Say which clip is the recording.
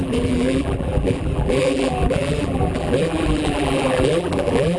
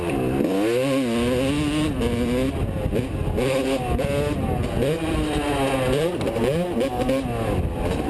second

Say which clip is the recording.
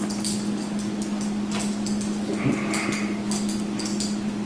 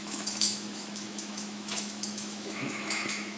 first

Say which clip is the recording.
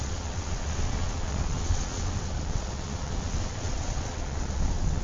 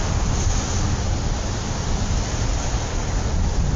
second